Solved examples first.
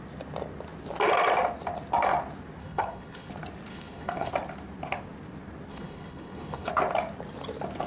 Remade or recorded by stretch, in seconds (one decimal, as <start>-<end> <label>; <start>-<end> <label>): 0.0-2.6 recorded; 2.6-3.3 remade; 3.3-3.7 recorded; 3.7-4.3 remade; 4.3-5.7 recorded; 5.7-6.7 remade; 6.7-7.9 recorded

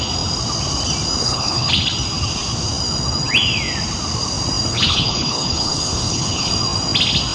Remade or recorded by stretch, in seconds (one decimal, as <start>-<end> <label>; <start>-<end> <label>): 0.0-1.2 recorded; 1.2-1.7 remade; 1.7-4.7 recorded; 4.7-6.5 remade; 6.5-7.3 recorded

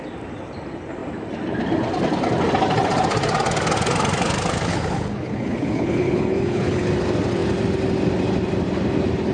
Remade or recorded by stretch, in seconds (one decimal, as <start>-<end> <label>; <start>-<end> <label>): 0.0-4.7 recorded; 4.7-6.9 remade; 6.9-9.3 recorded

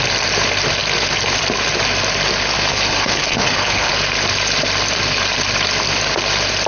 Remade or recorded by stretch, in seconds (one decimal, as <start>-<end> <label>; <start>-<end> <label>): 0.0-2.7 recorded; 2.7-3.9 remade; 3.9-6.7 recorded

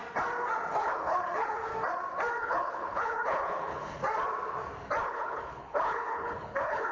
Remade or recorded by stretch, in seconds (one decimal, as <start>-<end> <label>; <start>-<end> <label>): 0.0-0.8 recorded; 0.8-1.7 remade; 1.7-2.4 recorded; 2.4-4.0 remade; 4.0-5.0 recorded; 5.0-6.9 remade

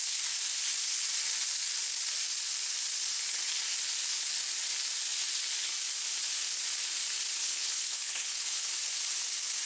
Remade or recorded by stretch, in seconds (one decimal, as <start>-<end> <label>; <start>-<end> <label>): 0.0-7.4 recorded; 7.4-8.6 remade; 8.6-9.7 recorded